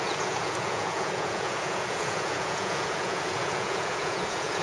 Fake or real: fake